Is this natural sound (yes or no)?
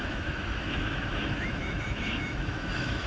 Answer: no